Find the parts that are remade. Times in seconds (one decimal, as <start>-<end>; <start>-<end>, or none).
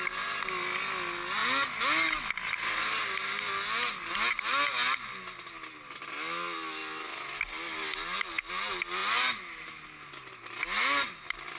none